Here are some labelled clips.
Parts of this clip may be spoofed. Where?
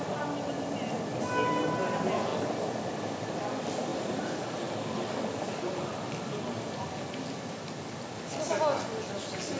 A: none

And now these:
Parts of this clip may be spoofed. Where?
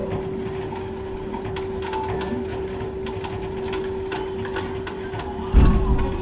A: none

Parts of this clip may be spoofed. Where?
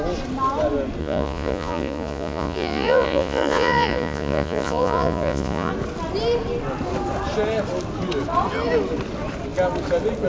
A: 1.0-5.7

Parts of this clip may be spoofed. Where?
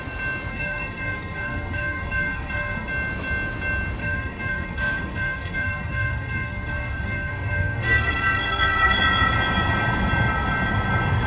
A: 0.5-2.9; 4.0-9.0